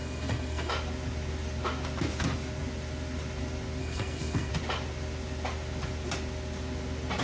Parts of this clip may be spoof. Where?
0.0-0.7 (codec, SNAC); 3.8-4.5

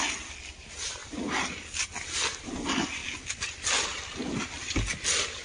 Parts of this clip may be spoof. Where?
none

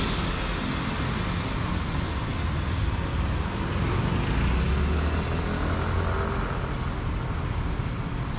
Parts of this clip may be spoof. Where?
none

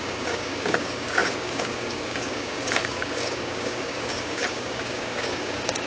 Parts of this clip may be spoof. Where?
0.0-5.9 (codec, DAC)

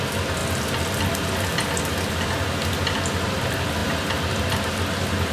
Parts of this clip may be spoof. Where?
none

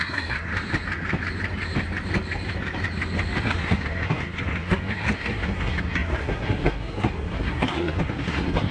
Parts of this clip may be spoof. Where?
0.0-0.5 (codec, SNAC); 3.4-8.7